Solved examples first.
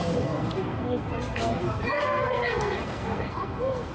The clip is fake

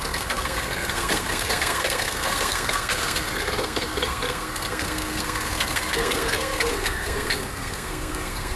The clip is fake